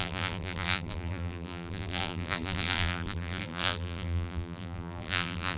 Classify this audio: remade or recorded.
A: remade